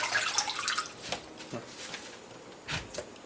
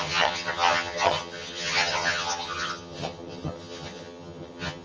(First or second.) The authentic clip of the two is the first